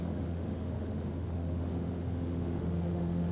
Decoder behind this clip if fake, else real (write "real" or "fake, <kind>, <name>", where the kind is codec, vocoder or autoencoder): fake, autoencoder, DAC-VAE